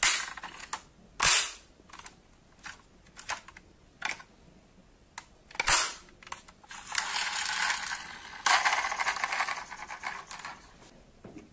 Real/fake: real